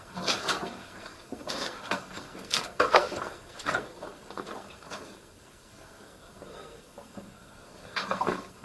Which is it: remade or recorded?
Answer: remade